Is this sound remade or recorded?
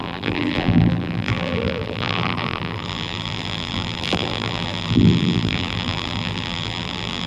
remade